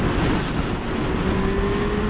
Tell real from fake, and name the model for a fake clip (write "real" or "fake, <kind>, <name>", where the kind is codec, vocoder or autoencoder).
real